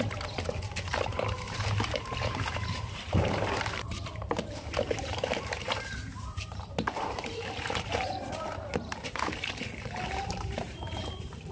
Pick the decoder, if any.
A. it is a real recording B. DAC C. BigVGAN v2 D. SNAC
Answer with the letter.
C